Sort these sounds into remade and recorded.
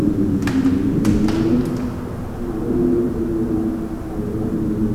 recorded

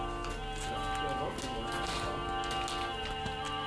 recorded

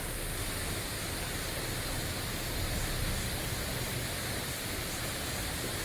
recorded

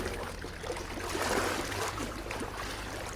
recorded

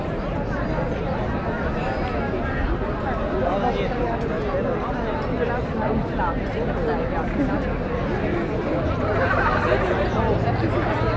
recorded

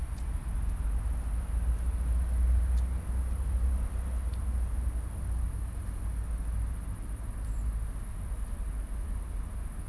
recorded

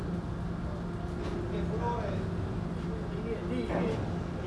recorded